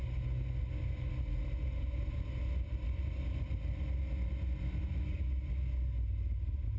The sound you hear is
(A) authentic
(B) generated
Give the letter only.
A